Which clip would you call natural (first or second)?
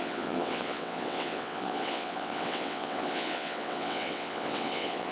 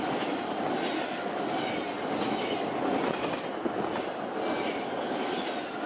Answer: second